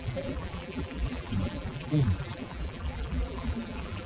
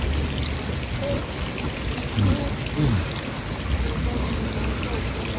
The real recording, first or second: second